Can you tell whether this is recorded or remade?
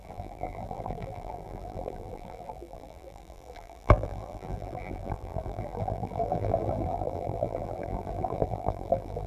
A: remade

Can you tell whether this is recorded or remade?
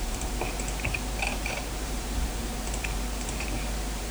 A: remade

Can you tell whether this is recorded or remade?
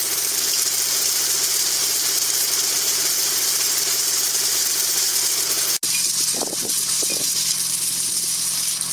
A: remade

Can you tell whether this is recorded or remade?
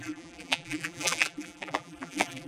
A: remade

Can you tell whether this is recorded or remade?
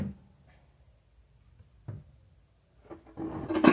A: recorded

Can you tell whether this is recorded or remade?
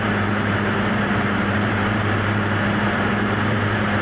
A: remade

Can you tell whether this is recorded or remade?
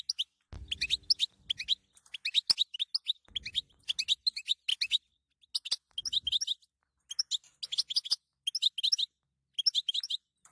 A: recorded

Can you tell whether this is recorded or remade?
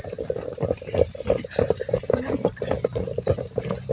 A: remade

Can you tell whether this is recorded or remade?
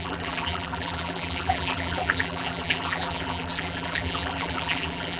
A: remade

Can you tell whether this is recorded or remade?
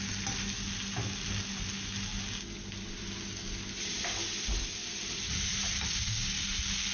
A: recorded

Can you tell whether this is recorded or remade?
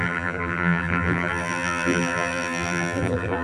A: remade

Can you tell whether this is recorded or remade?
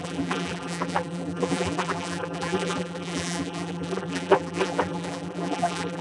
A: remade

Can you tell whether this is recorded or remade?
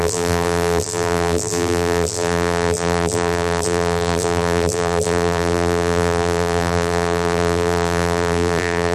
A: remade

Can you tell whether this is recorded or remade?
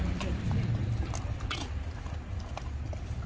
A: remade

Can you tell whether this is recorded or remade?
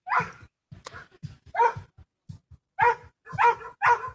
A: recorded